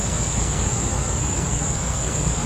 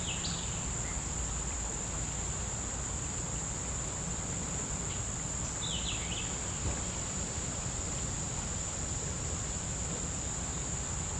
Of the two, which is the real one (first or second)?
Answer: second